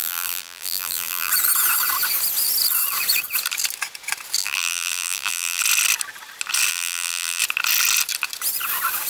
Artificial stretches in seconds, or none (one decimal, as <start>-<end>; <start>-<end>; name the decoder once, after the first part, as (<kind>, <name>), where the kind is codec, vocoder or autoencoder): 0.0-1.3 (vocoder, BigVGAN v2); 4.4-5.6; 6.7-7.4